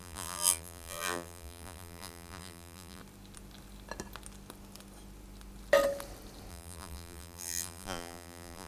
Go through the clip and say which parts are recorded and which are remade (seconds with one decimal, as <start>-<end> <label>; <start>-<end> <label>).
0.0-3.0 remade; 3.0-6.5 recorded; 6.5-8.7 remade